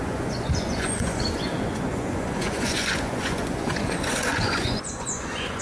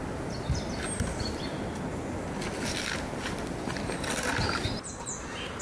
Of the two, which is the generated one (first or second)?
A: first